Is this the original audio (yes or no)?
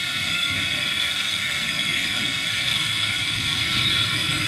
no